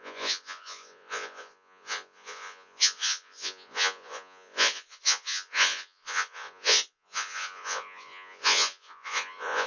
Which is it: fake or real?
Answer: fake